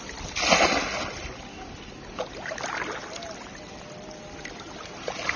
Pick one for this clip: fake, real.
real